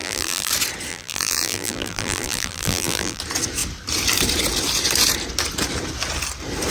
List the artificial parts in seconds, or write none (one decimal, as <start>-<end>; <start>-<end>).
0.0-0.5; 0.9-3.2